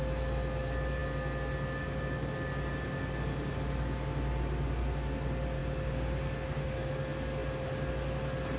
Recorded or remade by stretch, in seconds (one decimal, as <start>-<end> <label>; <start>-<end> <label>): 0.0-5.6 recorded; 5.6-6.9 remade; 6.9-8.6 recorded